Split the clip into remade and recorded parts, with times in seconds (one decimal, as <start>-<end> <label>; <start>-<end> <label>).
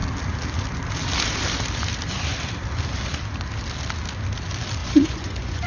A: 0.0-4.8 recorded; 4.8-5.7 remade